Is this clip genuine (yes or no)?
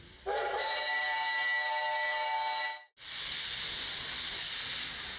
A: yes